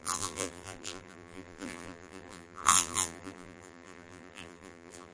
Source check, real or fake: fake